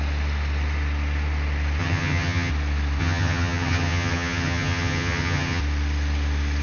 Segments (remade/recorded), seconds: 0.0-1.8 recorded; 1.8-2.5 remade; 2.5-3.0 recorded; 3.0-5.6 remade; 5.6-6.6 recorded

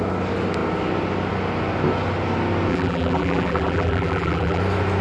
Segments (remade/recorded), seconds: 0.0-2.7 recorded; 2.7-4.6 remade; 4.6-5.0 recorded

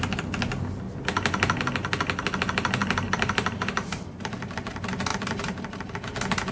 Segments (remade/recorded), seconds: 0.0-2.8 recorded; 2.8-4.3 remade; 4.3-5.1 recorded; 5.1-6.1 remade; 6.1-6.5 recorded

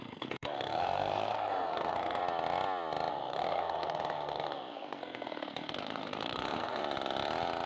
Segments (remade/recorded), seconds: 0.0-2.2 remade; 2.2-3.1 recorded; 3.1-6.8 remade; 6.8-7.7 recorded

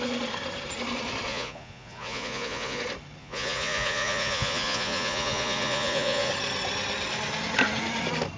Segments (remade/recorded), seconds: 0.0-1.3 recorded; 1.3-2.8 remade; 2.8-3.2 recorded; 3.2-6.3 remade; 6.3-8.4 recorded

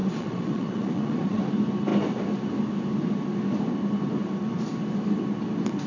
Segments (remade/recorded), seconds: 0.0-1.4 remade; 1.4-5.9 recorded